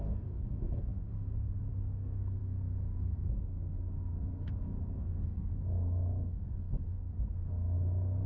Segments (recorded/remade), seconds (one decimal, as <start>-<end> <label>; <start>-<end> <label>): 0.0-8.3 remade